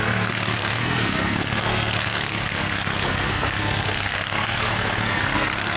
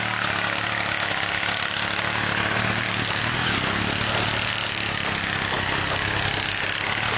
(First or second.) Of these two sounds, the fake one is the first